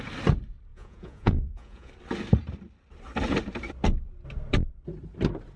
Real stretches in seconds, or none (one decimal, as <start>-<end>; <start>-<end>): 0.0-0.7; 1.9-5.6